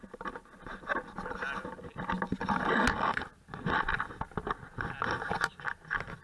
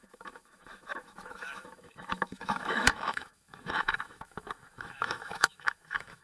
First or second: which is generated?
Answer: second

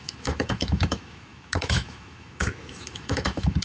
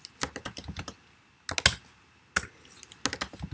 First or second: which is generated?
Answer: first